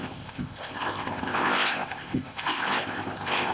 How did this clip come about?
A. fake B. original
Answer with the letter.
A